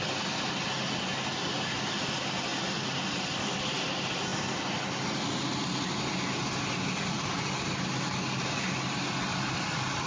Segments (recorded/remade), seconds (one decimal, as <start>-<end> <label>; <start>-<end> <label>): 0.0-10.1 recorded